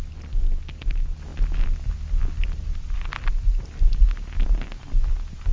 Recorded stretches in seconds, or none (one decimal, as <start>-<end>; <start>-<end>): 0.0-5.5